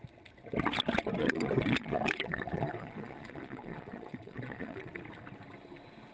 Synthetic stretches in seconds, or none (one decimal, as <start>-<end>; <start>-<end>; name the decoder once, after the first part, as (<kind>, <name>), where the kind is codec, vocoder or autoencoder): 1.2-4.9 (vocoder, Vocos)